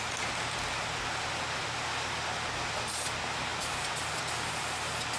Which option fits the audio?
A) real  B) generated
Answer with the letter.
A